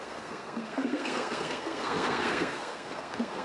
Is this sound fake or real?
fake